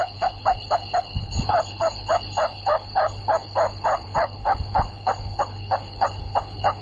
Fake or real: fake